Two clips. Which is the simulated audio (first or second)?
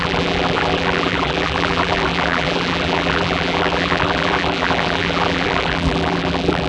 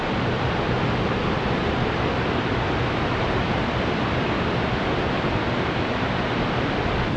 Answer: first